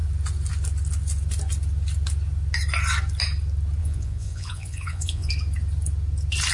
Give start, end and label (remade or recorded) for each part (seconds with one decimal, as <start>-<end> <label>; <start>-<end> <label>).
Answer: 0.0-3.8 recorded; 3.8-5.3 remade; 5.3-6.5 recorded